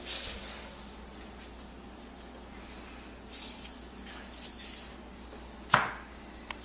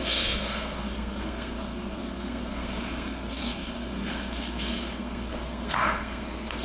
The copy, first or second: second